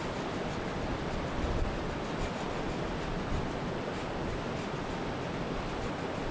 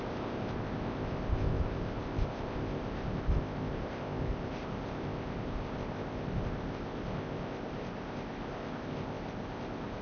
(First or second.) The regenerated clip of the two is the second